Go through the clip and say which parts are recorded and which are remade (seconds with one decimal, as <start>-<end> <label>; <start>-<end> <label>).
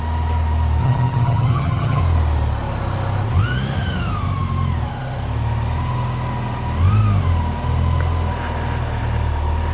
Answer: 0.0-0.8 recorded; 0.8-2.0 remade; 2.0-9.7 recorded